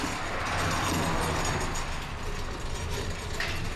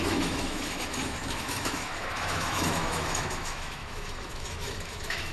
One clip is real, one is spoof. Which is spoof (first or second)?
second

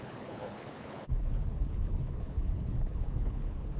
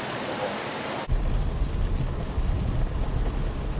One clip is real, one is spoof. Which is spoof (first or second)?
first